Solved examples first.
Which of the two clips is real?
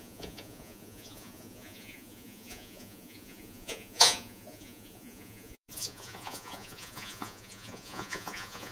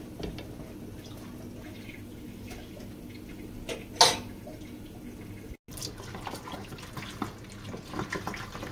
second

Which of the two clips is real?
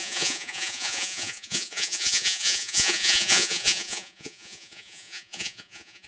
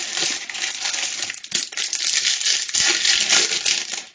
second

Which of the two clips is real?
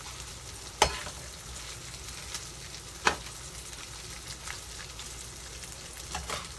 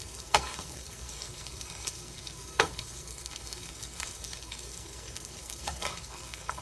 first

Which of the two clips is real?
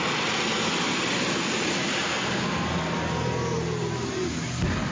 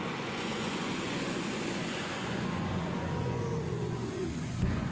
first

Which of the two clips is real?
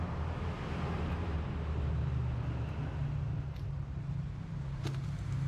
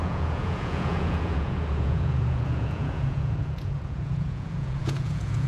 first